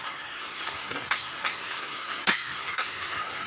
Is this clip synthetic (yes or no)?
yes